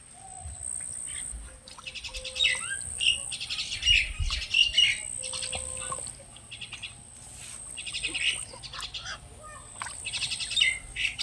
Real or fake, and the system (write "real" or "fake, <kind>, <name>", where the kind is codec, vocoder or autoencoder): real